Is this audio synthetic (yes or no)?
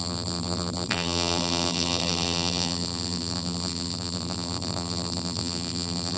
yes